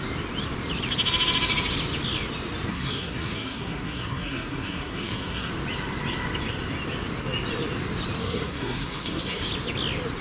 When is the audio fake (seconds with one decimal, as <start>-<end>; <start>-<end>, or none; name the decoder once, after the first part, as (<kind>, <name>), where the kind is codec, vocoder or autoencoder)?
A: 2.7-5.5 (codec, SNAC); 8.2-9.5